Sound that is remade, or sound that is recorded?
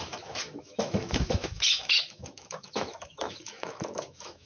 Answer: remade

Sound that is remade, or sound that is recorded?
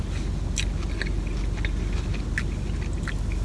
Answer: recorded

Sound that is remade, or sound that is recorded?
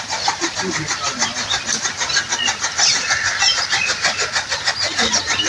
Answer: recorded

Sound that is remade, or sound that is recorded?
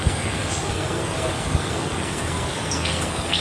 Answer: remade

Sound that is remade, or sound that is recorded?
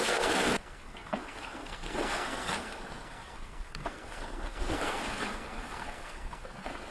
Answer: remade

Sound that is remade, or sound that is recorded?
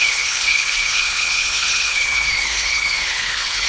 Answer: remade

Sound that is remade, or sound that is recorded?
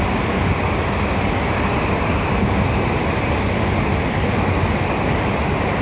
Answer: recorded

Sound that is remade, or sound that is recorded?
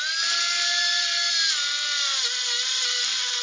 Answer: recorded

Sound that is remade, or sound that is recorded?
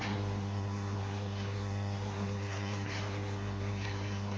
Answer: remade